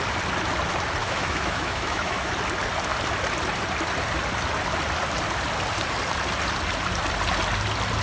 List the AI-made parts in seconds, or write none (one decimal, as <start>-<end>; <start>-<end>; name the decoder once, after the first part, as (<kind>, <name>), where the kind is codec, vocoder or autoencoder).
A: 1.0-2.3 (autoencoder, DAC-VAE)